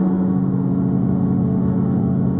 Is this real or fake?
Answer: fake